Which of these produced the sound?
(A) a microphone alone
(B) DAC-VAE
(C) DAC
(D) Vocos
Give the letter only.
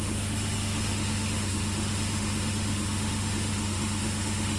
B